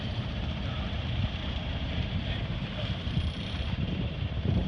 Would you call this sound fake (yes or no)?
yes